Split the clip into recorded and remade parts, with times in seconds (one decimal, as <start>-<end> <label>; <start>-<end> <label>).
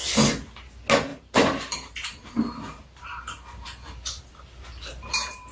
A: 0.0-1.1 recorded; 1.1-4.4 remade; 4.4-4.9 recorded; 4.9-5.5 remade